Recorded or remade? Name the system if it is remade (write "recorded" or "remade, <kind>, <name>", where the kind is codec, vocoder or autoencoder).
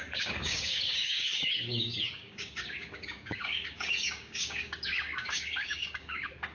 remade, codec, DAC